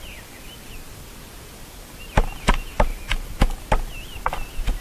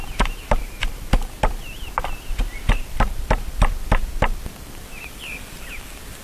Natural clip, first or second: first